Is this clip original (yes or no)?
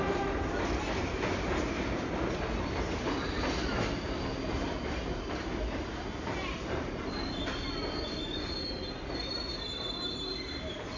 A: yes